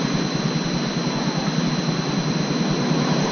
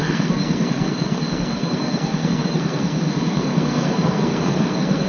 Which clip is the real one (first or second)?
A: first